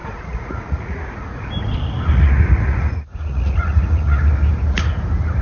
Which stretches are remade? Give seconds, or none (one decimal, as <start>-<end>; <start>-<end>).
0.0-1.5; 2.1-4.2